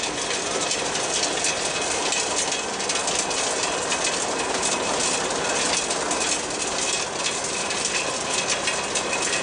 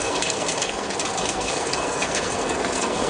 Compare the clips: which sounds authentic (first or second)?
first